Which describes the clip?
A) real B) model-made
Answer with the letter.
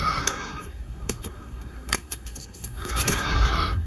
B